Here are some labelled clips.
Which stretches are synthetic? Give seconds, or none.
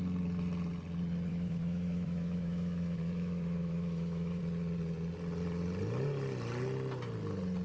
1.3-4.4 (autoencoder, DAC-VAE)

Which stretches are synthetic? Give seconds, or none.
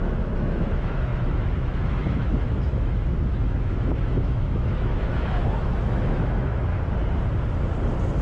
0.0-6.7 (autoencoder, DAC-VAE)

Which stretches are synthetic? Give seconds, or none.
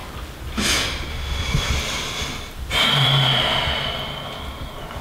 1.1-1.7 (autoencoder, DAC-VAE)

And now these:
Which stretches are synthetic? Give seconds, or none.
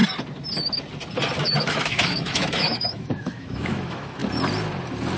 1.4-4.2 (autoencoder, DAC-VAE)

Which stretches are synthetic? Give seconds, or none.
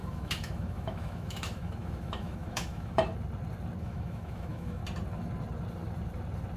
0.0-3.1 (autoencoder, DAC-VAE); 3.8-4.8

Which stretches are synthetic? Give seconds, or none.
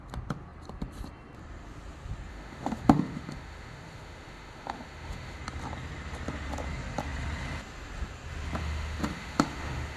2.3-5.4 (autoencoder, DAC-VAE); 8.6-10.0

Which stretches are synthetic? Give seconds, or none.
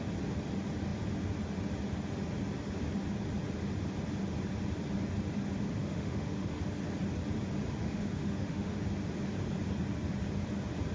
5.8-6.6 (autoencoder, DAC-VAE); 7.8-8.8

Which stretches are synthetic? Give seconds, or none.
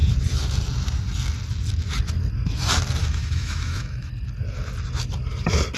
3.0-4.1 (autoencoder, DAC-VAE)